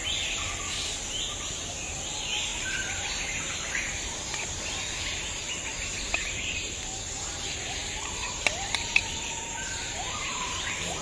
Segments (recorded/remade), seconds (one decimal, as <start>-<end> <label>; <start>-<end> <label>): 0.0-2.5 recorded; 2.5-6.7 remade; 6.7-7.8 recorded; 7.8-9.0 remade; 9.0-9.4 recorded; 9.4-11.0 remade